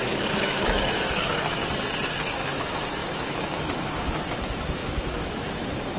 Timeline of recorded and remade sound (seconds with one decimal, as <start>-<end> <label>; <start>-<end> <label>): 0.0-1.6 remade; 1.6-2.3 recorded; 2.3-6.0 remade